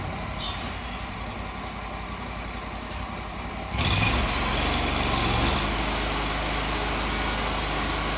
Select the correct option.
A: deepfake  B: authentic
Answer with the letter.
B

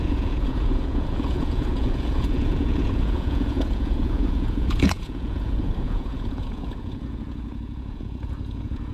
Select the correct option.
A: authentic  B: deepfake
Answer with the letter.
B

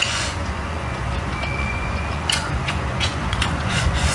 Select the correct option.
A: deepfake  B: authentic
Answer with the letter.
A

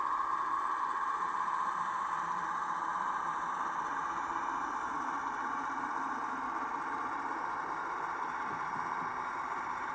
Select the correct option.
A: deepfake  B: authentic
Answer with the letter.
B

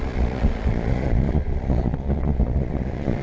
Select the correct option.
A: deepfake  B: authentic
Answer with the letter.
A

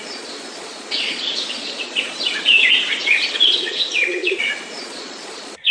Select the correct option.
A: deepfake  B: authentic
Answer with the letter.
A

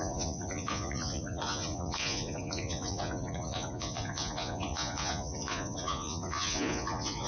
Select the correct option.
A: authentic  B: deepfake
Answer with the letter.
B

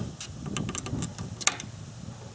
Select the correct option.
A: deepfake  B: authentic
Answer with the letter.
B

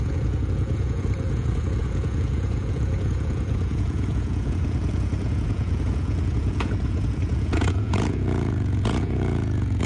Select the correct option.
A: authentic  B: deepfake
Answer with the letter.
B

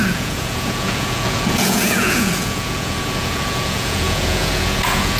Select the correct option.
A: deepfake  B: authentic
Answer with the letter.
A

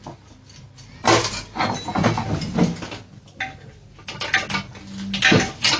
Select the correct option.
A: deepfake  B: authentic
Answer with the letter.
B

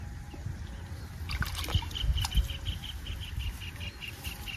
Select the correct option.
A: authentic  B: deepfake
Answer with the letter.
A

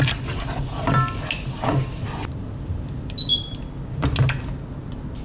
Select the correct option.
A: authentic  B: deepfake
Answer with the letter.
A